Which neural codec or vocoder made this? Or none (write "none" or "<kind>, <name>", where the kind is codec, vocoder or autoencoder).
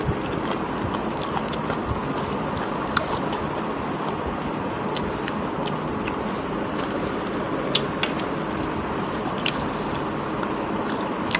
none